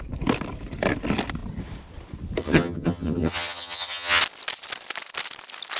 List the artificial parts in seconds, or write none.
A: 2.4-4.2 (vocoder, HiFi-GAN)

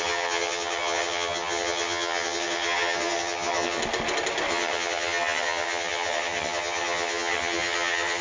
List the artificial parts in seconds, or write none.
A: 0.0-3.8 (vocoder, HiFi-GAN); 4.5-8.2